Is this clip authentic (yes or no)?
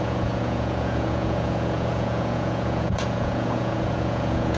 no